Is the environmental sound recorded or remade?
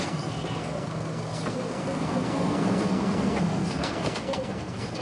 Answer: remade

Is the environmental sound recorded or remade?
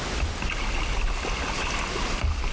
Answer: recorded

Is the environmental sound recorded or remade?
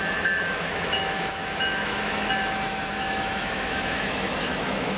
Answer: remade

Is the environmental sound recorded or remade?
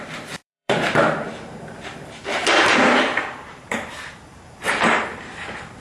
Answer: remade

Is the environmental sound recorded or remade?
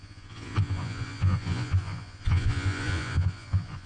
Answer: remade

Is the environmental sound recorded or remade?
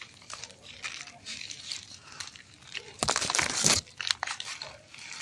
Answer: remade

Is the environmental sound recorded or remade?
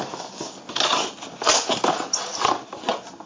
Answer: recorded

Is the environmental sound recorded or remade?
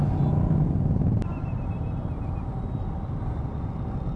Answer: recorded